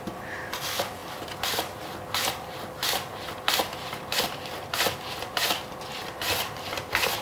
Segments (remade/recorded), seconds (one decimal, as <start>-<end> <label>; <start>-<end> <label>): 0.0-7.2 recorded

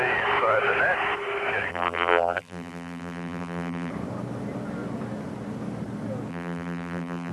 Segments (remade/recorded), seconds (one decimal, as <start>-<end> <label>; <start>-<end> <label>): 0.0-1.7 recorded; 1.7-3.9 remade; 3.9-6.3 recorded; 6.3-7.3 remade

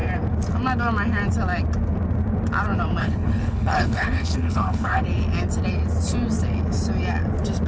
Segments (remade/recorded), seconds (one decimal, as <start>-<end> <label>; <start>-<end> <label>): 0.0-3.0 recorded; 3.0-5.0 remade; 5.0-7.7 recorded

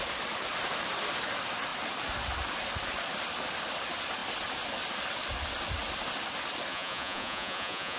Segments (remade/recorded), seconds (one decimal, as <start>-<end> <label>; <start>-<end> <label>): 0.0-6.7 recorded; 6.7-8.0 remade

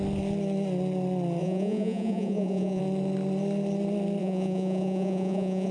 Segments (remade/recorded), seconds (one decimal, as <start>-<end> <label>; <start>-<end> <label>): 0.0-1.4 recorded; 1.4-2.8 remade; 2.8-4.2 recorded; 4.2-5.7 remade

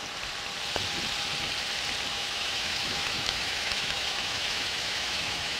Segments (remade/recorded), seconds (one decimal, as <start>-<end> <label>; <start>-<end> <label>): 0.0-2.1 recorded; 2.1-5.6 remade

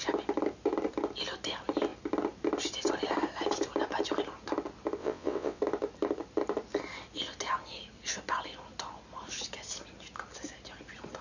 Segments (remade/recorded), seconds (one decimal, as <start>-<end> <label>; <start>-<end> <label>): 0.0-5.0 recorded; 5.0-5.6 remade; 5.6-11.2 recorded